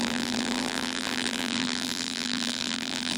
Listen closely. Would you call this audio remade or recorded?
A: remade